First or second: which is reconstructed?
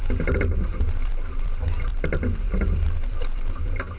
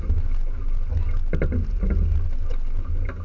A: first